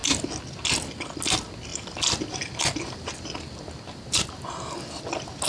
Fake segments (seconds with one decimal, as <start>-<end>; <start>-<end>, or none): none